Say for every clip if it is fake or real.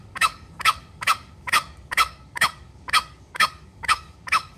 fake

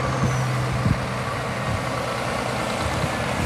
real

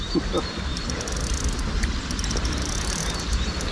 real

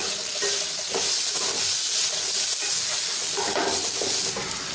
real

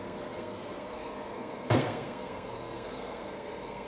fake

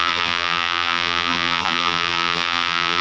fake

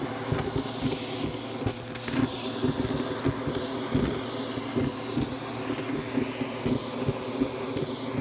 real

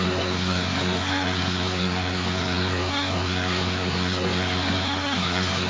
fake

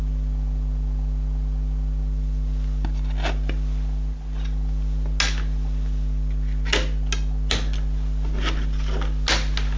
real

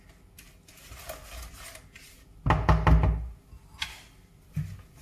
real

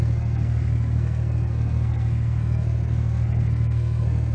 fake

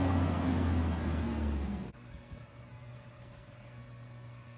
fake